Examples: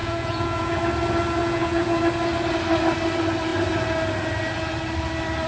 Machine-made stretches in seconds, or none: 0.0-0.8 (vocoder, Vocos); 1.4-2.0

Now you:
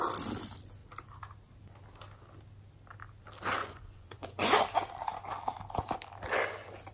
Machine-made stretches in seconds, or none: 3.6-4.6 (vocoder, Vocos)

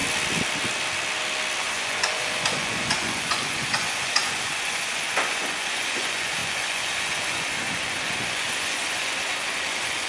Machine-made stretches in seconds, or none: 1.6-10.1 (vocoder, Vocos)

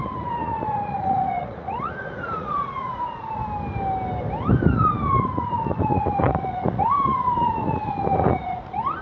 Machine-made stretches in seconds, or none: 0.0-3.4 (vocoder, Vocos); 4.7-9.0

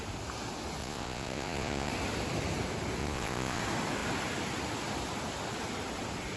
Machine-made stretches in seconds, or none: 0.8-1.9 (vocoder, Vocos); 3.0-3.6

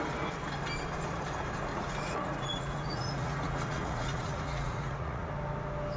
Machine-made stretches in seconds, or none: 1.7-5.3 (vocoder, Vocos)

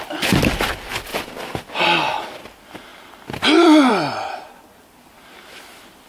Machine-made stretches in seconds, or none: none